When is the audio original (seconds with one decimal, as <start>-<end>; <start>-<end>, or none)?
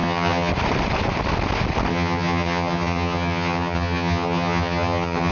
0.5-1.9